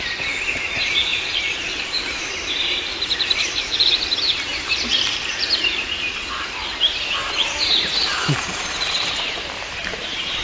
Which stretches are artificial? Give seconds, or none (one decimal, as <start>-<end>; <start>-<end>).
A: 0.0-10.4